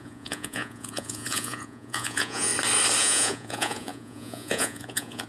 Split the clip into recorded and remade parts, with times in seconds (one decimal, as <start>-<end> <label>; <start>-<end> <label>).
0.0-2.5 remade; 2.5-3.0 recorded; 3.0-5.3 remade